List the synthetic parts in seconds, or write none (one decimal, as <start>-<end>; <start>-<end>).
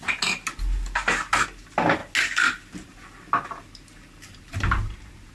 none